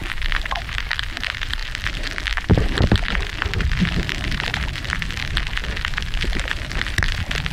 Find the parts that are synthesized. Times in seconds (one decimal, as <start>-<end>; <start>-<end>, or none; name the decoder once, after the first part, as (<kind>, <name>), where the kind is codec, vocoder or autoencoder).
0.0-5.2 (vocoder, BigVGAN v2); 5.9-7.5